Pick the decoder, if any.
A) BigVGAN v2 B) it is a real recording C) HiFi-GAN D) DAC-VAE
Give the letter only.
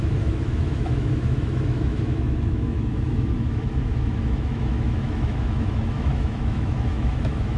D